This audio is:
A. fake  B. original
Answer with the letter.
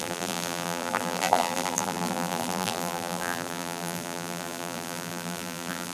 A